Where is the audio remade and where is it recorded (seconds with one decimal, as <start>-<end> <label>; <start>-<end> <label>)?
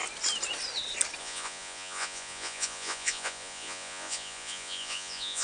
0.0-1.2 recorded; 1.2-5.4 remade